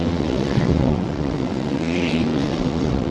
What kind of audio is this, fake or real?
fake